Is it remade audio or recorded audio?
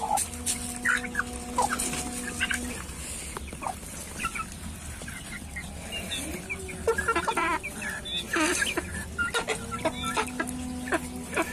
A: recorded